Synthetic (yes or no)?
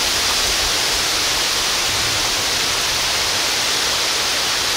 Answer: no